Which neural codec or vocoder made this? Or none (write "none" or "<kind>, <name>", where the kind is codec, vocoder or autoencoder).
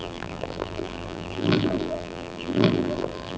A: vocoder, BigVGAN v2